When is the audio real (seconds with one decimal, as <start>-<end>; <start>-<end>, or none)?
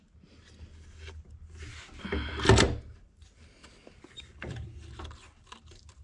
0.0-6.0